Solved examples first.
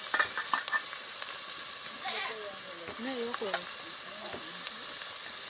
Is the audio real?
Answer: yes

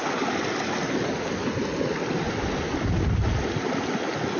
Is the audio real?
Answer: yes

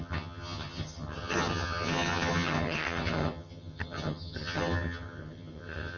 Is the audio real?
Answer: no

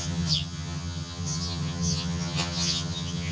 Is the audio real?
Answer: no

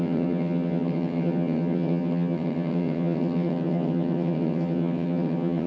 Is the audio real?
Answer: no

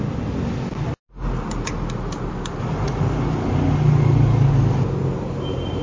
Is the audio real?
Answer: yes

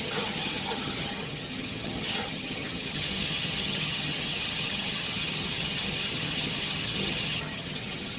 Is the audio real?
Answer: no